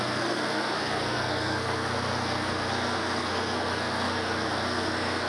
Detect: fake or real fake